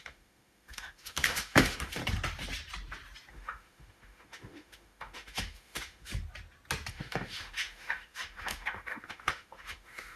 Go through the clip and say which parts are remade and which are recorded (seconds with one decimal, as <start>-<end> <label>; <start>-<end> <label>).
0.0-2.0 remade; 2.0-3.3 recorded; 3.3-6.1 remade; 6.1-6.9 recorded; 6.9-10.2 remade